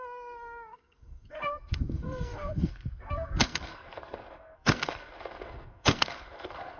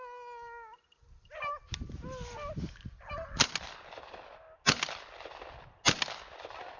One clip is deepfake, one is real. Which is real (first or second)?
second